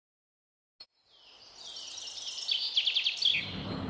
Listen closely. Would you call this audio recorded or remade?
recorded